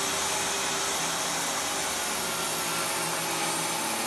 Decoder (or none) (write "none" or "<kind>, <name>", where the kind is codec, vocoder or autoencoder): none